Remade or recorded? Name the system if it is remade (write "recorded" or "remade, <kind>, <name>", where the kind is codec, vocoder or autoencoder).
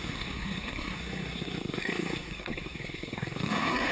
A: remade, codec, SNAC